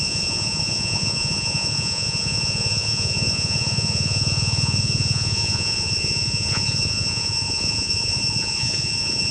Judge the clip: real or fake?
fake